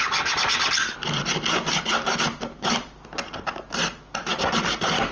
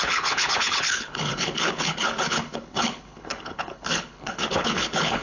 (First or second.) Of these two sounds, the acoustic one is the first